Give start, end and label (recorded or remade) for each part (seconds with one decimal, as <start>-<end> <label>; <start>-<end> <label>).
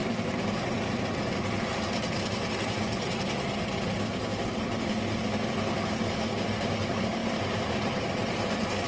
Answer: 0.0-1.2 remade; 1.2-7.2 recorded; 7.2-8.1 remade; 8.1-8.9 recorded